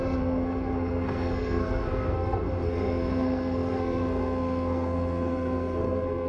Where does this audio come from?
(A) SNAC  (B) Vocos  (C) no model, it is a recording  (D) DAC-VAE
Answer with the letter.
A